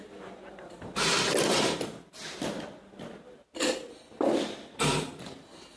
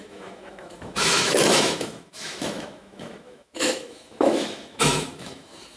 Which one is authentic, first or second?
first